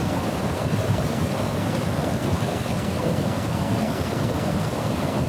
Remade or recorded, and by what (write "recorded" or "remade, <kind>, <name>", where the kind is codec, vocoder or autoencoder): remade, codec, SNAC